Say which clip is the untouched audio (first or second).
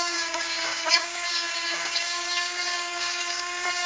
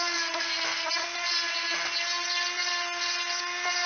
second